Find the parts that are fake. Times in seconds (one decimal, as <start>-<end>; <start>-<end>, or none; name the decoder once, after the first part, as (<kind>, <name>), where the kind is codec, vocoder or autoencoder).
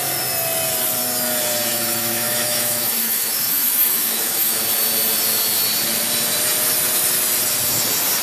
1.7-4.6 (autoencoder, DAC-VAE)